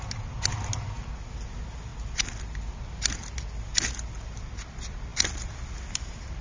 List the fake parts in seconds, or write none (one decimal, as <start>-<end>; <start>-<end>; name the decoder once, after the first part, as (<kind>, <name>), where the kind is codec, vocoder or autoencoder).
none